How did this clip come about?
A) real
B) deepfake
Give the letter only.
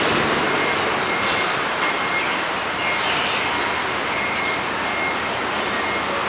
A